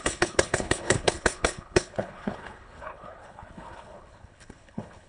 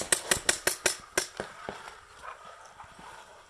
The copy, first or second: first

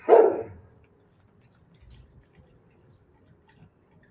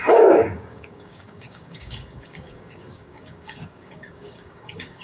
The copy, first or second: second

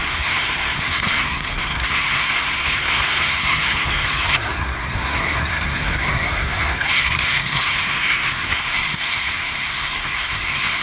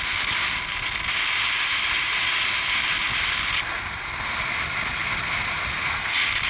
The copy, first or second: first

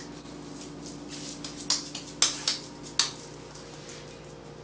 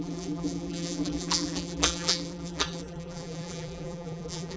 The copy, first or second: second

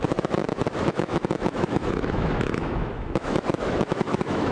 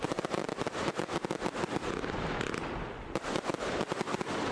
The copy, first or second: first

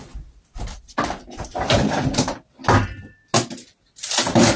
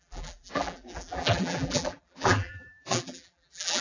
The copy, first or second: second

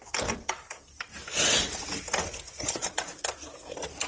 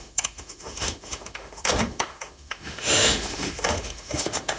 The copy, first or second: second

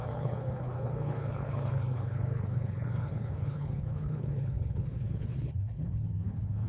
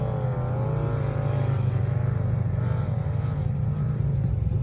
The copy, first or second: first